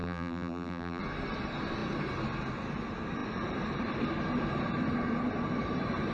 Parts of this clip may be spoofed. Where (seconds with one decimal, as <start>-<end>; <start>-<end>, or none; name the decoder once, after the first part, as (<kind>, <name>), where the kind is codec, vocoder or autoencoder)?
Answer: 0.0-1.0 (vocoder, BigVGAN v2)